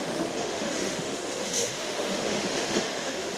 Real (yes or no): no